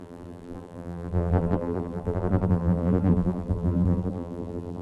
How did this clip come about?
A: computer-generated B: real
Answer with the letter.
A